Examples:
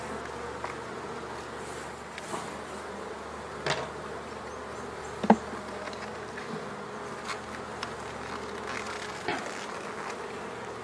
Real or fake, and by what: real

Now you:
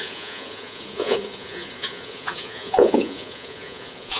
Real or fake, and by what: fake, vocoder, Vocos